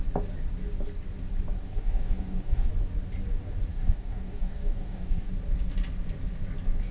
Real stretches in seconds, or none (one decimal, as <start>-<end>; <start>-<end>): 0.0-1.7; 2.7-3.7; 5.3-6.9